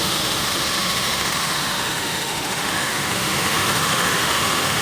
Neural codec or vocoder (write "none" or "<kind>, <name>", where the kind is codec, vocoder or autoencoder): autoencoder, DAC-VAE